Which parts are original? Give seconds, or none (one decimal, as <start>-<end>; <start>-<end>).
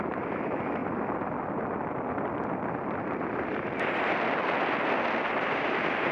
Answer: 0.0-6.1